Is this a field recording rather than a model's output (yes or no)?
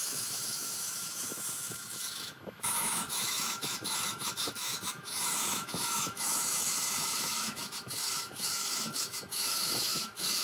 no